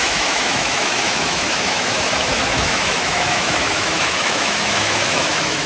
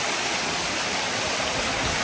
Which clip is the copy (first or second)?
first